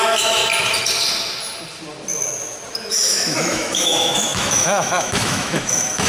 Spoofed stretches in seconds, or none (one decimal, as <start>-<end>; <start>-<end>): 0.0-0.4; 2.9-6.1